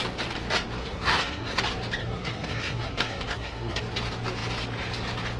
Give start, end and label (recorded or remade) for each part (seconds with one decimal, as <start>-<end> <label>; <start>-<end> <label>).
0.0-0.8 recorded; 0.8-1.6 remade; 1.6-2.0 recorded; 2.0-3.8 remade; 3.8-5.4 recorded